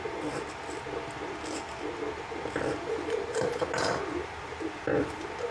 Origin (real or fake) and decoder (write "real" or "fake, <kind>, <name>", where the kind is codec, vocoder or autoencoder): fake, vocoder, BigVGAN v2